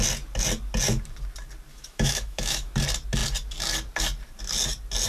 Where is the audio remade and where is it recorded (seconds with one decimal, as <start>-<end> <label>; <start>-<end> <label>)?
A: 0.0-1.7 recorded; 1.7-2.7 remade; 2.7-5.1 recorded